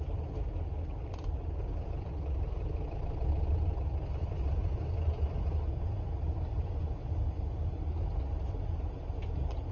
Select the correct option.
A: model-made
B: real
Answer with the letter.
B